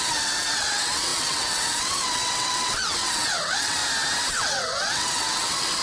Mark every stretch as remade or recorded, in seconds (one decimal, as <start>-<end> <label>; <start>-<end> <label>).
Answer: 0.0-3.8 remade; 3.8-4.3 recorded; 4.3-5.8 remade